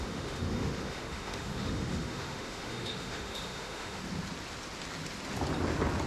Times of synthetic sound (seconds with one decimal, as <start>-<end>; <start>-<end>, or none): 0.0-4.0